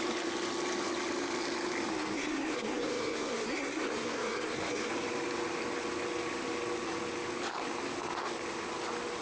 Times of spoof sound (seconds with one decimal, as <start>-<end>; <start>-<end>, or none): 1.9-4.9